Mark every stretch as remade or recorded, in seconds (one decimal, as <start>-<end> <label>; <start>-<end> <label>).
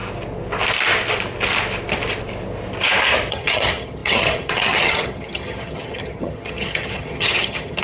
0.0-3.3 recorded; 3.3-7.8 remade